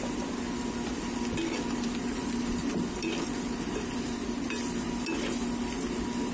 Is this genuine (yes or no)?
yes